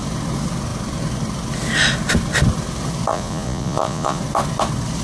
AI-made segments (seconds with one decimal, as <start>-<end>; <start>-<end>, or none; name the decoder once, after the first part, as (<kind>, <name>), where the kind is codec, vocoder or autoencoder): 3.1-4.2 (vocoder, Vocos)